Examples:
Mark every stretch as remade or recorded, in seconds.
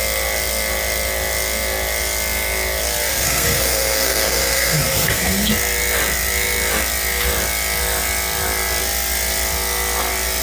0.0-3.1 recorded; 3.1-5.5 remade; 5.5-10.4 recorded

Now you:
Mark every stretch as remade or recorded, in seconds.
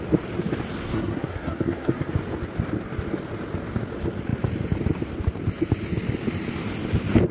0.0-0.8 recorded; 0.8-2.1 remade; 2.1-7.3 recorded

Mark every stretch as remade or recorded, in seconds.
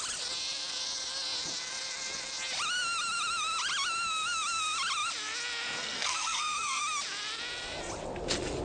0.0-5.8 recorded; 5.8-6.8 remade; 6.8-8.6 recorded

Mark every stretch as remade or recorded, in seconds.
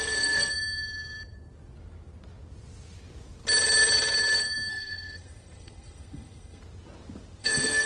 0.0-0.5 remade; 0.5-4.7 recorded; 4.7-6.6 remade; 6.6-7.4 recorded; 7.4-7.9 remade